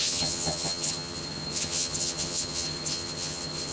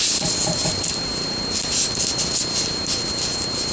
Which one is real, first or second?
second